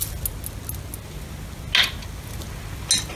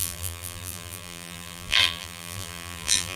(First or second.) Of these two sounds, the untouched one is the first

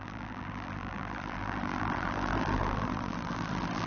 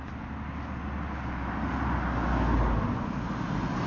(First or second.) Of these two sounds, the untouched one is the second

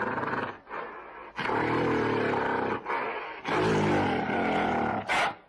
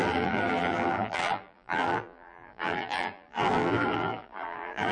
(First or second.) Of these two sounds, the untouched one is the first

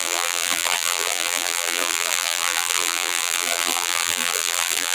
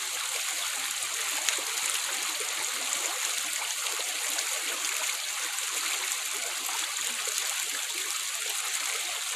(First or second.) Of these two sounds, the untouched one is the second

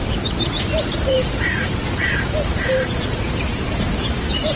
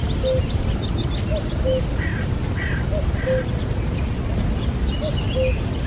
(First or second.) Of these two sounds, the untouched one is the second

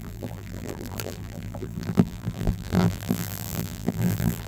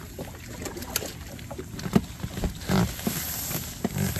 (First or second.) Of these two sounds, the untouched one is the second